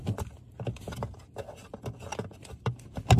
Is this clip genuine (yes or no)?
yes